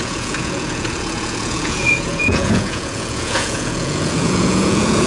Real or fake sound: fake